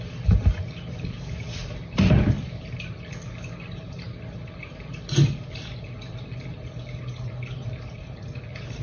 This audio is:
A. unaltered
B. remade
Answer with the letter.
A